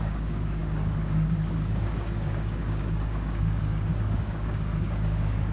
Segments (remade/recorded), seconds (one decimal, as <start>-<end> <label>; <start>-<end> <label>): 0.0-5.5 remade